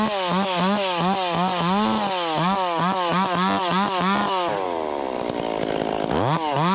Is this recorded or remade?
recorded